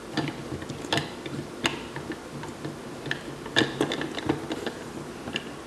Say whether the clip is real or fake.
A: real